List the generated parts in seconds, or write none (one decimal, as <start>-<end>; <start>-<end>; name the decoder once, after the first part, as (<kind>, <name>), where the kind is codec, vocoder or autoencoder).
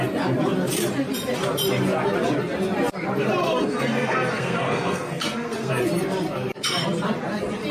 3.4-5.7 (codec, SNAC)